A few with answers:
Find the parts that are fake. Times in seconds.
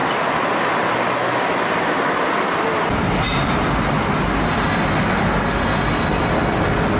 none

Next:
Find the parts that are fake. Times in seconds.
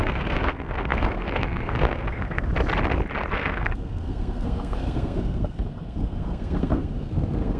0.0-2.5 (codec, SNAC); 3.3-7.6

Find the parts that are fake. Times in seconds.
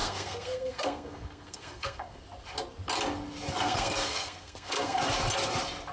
0.0-2.2 (codec, SNAC); 3.5-5.0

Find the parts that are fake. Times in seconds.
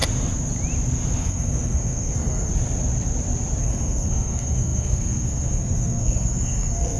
1.2-2.5 (codec, SNAC); 3.6-7.0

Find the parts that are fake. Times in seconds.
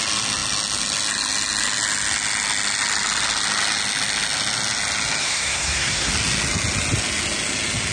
5.2-6.1 (codec, SNAC)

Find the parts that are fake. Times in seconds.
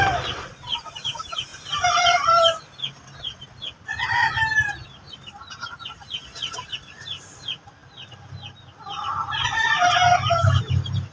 none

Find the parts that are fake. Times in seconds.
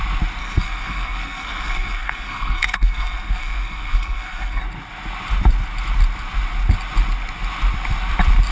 0.4-4.6 (codec, SNAC)